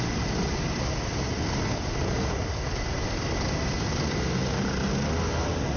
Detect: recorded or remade recorded